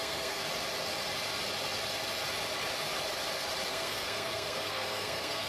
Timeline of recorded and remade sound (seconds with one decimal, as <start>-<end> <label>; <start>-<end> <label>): 0.0-0.4 remade; 0.4-3.7 recorded; 3.7-5.5 remade